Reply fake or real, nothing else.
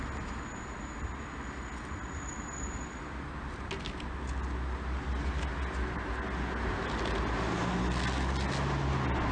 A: real